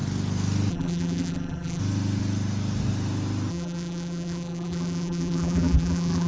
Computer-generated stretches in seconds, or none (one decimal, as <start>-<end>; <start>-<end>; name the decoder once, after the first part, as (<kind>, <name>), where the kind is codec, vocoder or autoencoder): 0.7-1.8 (vocoder, BigVGAN v2); 3.5-6.3